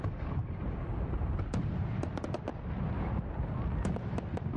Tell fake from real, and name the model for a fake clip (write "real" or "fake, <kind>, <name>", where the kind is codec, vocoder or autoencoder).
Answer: real